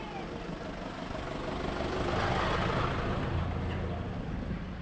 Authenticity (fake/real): real